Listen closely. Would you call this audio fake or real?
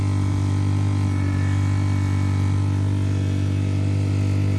real